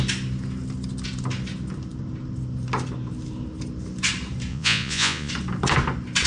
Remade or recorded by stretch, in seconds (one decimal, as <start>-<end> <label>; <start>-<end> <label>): 0.0-4.5 recorded; 4.5-5.3 remade; 5.3-6.3 recorded